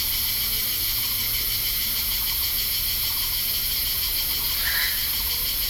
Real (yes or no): yes